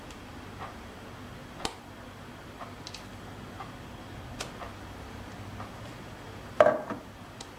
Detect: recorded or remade recorded